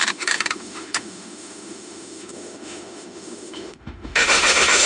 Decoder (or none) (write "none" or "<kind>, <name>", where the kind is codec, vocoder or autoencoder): autoencoder, DAC-VAE